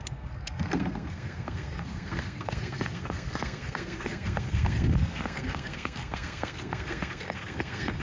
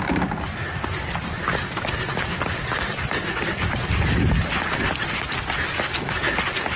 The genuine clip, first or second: second